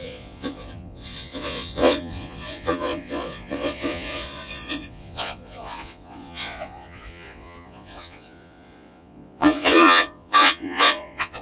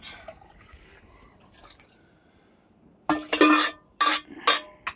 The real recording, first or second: second